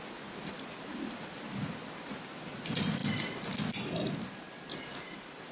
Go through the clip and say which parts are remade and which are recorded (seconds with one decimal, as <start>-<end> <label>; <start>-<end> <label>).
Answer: 0.0-5.5 recorded